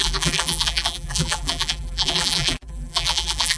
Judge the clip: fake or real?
fake